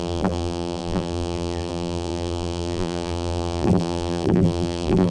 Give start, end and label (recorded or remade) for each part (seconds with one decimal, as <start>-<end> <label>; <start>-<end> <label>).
0.0-5.1 remade